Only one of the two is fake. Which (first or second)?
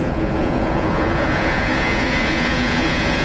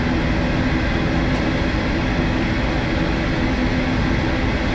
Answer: first